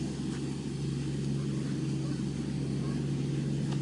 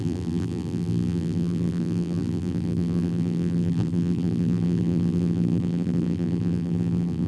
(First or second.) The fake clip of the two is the second